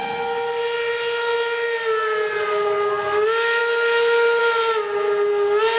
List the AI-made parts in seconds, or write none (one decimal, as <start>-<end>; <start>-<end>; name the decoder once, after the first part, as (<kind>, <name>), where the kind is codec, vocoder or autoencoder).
none